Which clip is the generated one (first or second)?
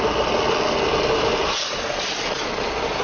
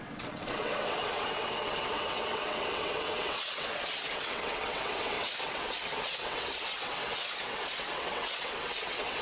second